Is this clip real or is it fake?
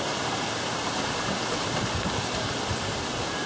real